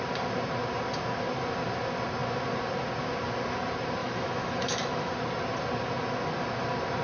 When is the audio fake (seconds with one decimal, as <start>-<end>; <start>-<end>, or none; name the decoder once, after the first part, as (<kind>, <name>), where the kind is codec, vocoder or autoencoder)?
4.0-5.1 (autoencoder, DAC-VAE)